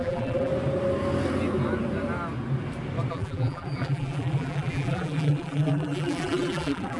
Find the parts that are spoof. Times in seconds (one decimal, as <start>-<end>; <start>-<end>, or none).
0.0-0.5; 3.1-7.0